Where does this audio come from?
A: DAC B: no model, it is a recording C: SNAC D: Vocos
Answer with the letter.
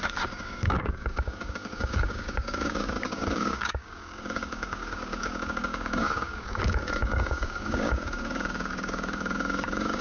A